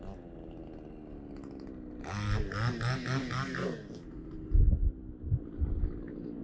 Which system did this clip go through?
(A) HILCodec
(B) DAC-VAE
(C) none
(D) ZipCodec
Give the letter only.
C